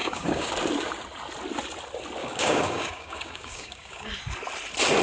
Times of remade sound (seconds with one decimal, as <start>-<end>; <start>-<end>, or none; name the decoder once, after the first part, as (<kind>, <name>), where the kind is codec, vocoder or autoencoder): 0.0-0.5 (codec, DAC); 2.2-4.1